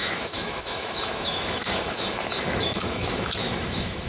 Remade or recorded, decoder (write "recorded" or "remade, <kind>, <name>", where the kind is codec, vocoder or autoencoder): remade, autoencoder, DAC-VAE